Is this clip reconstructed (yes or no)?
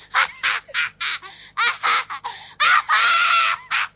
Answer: no